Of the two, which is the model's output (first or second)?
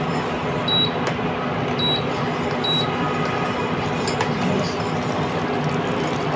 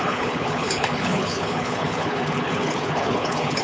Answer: second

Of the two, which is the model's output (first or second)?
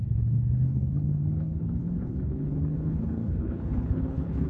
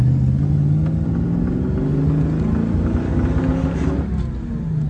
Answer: first